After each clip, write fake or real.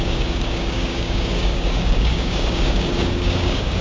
fake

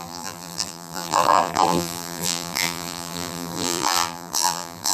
fake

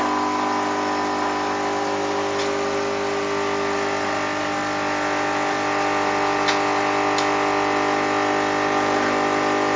real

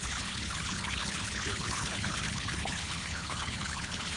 fake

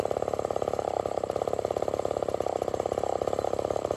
fake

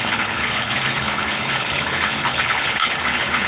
fake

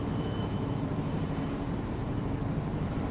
fake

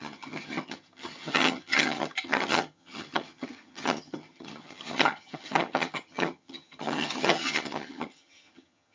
fake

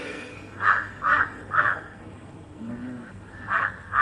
fake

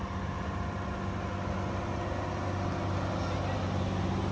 real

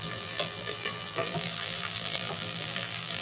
fake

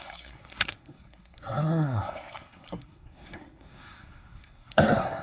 fake